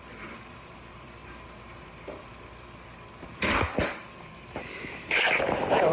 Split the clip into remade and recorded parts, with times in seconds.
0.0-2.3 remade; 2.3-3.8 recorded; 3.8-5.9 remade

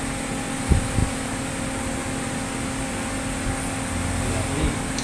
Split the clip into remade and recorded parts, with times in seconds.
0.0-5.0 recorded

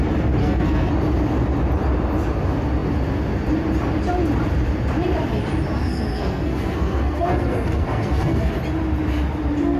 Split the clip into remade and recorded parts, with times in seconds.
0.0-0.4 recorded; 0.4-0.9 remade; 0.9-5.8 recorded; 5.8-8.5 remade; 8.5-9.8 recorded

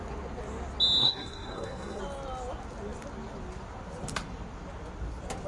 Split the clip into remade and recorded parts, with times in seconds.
0.0-1.0 recorded; 1.0-2.0 remade; 2.0-5.5 recorded

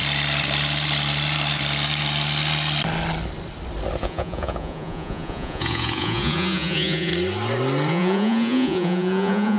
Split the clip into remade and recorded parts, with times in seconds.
0.0-4.0 recorded; 4.0-7.1 remade; 7.1-7.9 recorded; 7.9-9.6 remade

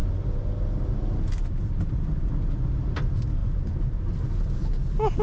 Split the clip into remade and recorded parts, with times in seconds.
0.0-5.2 recorded

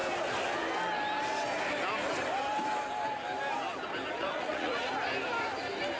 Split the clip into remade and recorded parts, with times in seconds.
0.0-4.2 recorded; 4.2-4.9 remade; 4.9-6.0 recorded